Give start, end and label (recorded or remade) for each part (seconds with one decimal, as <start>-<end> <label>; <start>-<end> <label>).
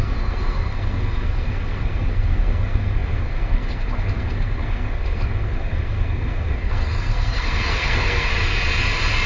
0.0-8.3 remade; 8.3-9.3 recorded